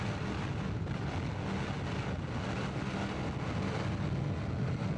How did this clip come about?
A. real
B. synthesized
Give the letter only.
A